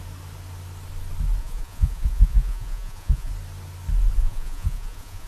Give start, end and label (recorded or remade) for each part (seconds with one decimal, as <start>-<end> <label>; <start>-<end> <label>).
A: 0.0-1.4 recorded; 1.4-3.3 remade; 3.3-4.2 recorded; 4.2-5.3 remade